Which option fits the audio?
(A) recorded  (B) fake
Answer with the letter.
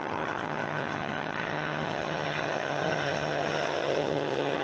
B